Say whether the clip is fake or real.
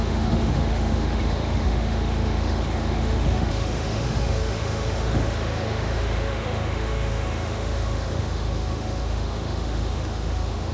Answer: fake